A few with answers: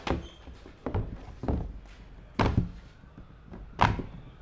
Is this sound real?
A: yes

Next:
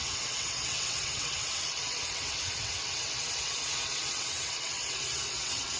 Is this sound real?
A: no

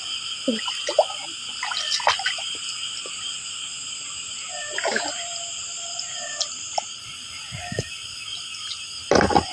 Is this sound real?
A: yes